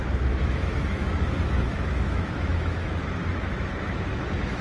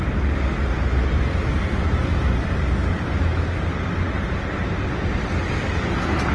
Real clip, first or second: second